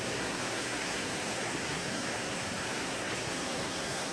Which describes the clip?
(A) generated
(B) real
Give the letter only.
A